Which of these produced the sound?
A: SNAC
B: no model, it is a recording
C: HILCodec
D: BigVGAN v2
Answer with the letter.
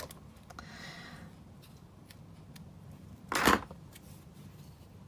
B